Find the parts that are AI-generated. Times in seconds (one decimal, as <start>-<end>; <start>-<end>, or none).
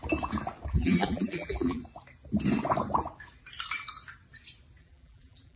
0.7-1.8; 4.8-5.6